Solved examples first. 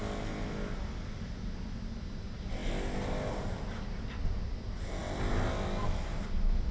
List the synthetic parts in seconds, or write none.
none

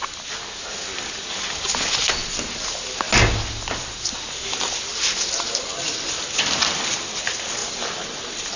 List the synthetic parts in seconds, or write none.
none

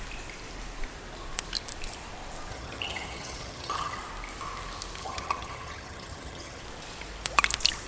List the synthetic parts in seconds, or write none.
2.5-4.0 (vocoder, HiFi-GAN); 5.0-6.6

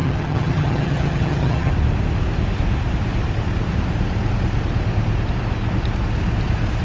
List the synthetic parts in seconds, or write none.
0.0-1.7 (vocoder, HiFi-GAN)

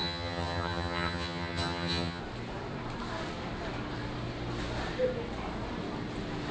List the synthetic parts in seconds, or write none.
0.0-2.2 (vocoder, HiFi-GAN)

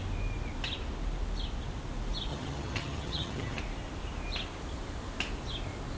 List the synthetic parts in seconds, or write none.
2.3-3.6 (vocoder, HiFi-GAN)